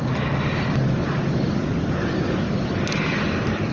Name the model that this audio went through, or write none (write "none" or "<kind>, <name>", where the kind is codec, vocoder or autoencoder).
none